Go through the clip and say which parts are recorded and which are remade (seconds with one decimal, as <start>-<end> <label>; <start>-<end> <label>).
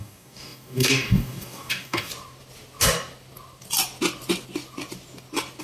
0.0-2.1 remade; 2.1-5.6 recorded